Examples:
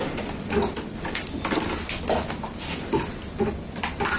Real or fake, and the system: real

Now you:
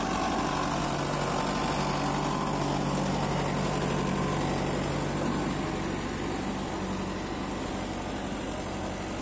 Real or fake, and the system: real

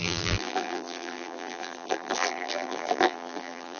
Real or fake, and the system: fake, vocoder, BigVGAN v2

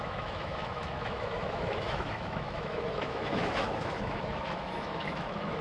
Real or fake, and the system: fake, autoencoder, DAC-VAE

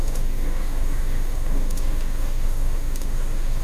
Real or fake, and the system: fake, codec, DAC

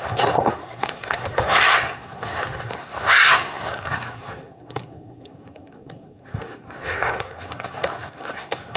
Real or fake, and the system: fake, codec, SNAC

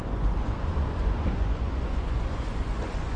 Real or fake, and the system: fake, vocoder, Vocos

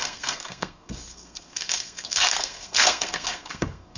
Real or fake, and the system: fake, codec, SNAC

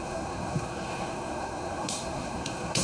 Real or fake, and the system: fake, codec, SNAC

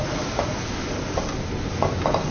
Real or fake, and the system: real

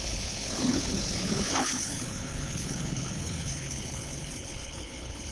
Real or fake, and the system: fake, codec, HILCodec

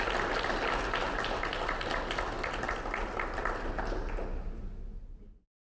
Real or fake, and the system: real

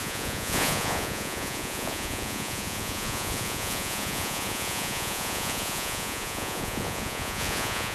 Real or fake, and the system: fake, vocoder, Vocos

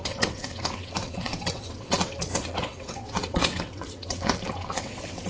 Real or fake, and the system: fake, vocoder, WaveNeXt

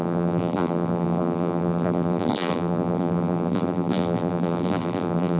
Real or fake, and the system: fake, vocoder, BigVGAN v2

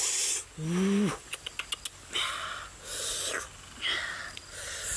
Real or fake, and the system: real